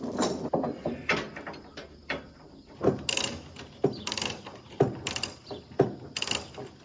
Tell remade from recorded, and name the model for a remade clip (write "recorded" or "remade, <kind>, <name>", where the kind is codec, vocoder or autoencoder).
recorded